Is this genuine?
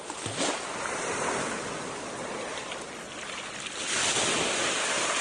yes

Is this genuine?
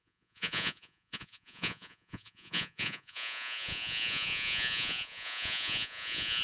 no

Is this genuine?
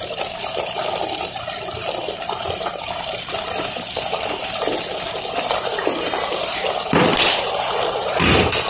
no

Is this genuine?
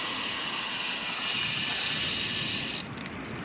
yes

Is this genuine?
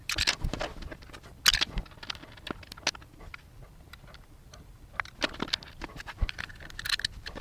yes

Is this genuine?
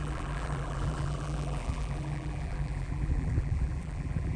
no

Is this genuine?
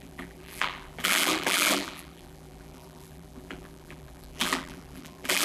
no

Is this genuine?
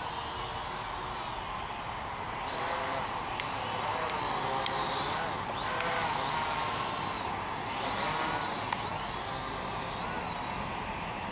yes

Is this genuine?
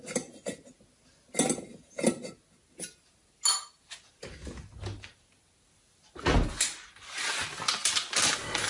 yes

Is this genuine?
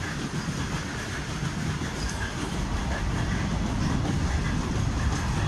yes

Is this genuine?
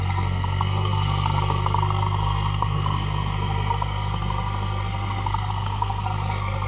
no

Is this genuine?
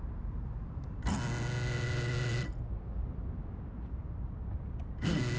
yes